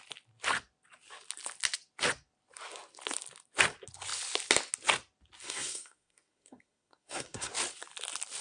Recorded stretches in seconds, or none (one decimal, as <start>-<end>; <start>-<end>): 0.0-5.4; 7.5-8.4